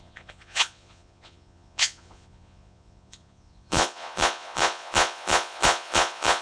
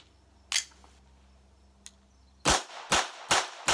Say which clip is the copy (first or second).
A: first